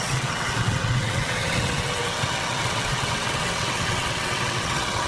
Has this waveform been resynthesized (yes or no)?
yes